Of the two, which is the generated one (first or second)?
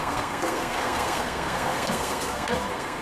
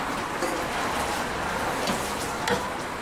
first